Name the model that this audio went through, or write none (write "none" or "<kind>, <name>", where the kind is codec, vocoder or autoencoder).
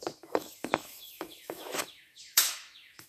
autoencoder, DAC-VAE